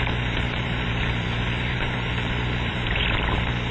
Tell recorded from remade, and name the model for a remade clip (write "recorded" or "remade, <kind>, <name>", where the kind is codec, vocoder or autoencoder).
remade, vocoder, BigVGAN v2